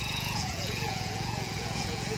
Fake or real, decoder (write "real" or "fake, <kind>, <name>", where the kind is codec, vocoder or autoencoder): fake, vocoder, Vocos